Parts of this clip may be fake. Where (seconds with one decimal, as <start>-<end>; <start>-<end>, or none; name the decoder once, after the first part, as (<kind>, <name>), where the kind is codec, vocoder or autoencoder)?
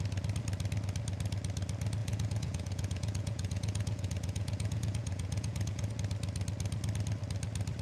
2.0-5.9 (vocoder, Vocos)